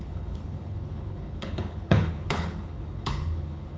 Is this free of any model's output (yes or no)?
no